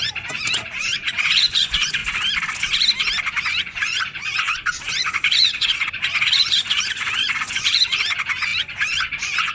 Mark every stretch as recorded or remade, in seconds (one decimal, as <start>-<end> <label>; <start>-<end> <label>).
0.0-2.0 remade; 2.0-3.4 recorded; 3.4-9.5 remade